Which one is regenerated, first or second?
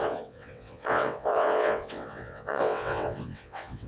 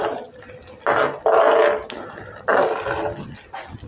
first